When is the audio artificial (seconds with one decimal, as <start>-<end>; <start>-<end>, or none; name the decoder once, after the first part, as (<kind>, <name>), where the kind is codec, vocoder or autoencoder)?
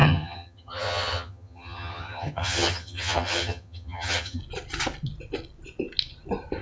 0.0-4.4 (vocoder, HiFi-GAN)